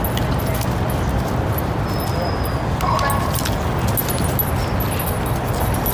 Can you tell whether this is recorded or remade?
recorded